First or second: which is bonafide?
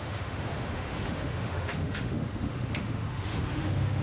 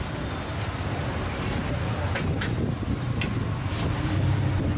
second